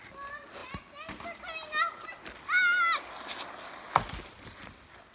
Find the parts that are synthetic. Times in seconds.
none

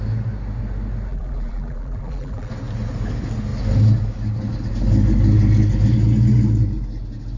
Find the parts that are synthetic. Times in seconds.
1.1-2.5 (vocoder, BigVGAN v2)

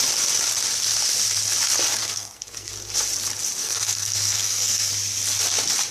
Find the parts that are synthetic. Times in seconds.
2.0-2.7 (codec, SNAC); 3.6-4.9